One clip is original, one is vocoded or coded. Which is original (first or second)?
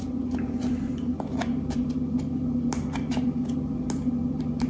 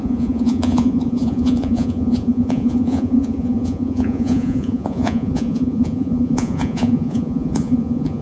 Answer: first